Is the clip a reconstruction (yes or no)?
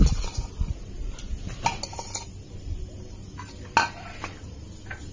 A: no